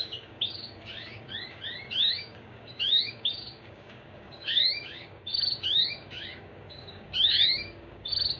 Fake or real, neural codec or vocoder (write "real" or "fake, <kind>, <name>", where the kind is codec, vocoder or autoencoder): fake, codec, DAC